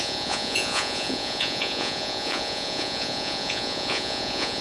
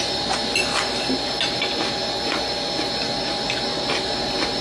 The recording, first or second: second